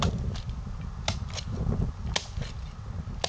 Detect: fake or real real